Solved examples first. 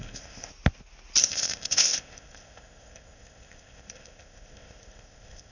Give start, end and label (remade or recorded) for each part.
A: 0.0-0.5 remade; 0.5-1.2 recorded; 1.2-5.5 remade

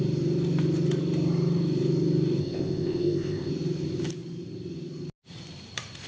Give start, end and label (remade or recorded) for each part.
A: 0.0-2.4 recorded; 2.4-3.5 remade; 3.5-6.1 recorded